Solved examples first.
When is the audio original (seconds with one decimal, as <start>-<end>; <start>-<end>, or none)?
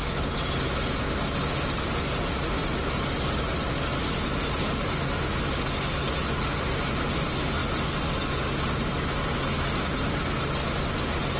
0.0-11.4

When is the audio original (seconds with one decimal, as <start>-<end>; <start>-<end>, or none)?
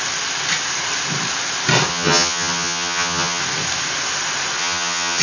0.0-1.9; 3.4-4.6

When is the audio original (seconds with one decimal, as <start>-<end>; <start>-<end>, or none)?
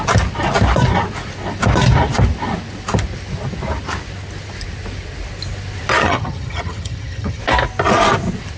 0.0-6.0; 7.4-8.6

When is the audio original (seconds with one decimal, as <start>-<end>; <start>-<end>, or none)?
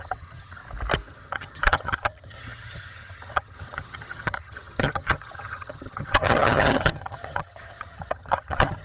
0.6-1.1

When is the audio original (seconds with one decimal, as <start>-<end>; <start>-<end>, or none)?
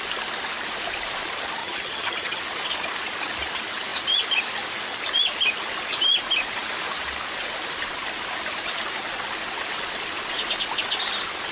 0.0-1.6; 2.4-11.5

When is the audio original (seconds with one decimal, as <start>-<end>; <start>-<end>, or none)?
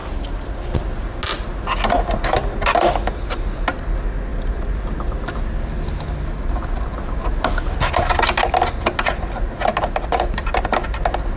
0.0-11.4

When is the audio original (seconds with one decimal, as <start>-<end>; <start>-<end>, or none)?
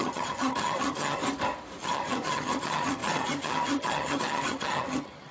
1.2-1.8